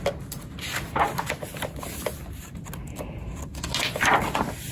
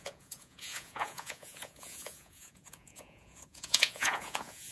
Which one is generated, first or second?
second